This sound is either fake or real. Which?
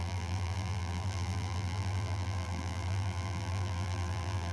fake